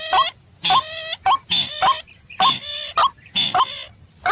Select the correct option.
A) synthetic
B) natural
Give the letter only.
B